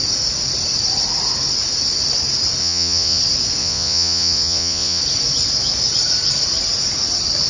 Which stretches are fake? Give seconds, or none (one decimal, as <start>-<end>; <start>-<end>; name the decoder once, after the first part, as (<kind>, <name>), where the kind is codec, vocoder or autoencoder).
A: 2.6-3.2 (vocoder, Vocos); 3.6-5.0